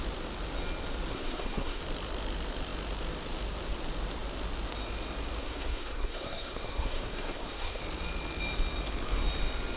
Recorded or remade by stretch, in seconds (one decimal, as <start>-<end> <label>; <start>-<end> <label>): 0.0-1.1 recorded; 1.1-1.8 remade; 1.8-5.4 recorded; 5.4-7.8 remade; 7.8-9.8 recorded